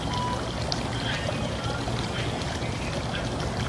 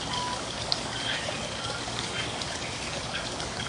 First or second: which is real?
first